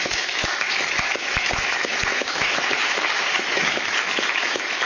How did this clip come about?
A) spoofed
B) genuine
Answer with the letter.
A